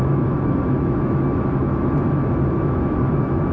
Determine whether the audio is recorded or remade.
remade